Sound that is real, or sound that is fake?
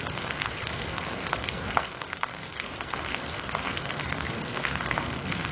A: fake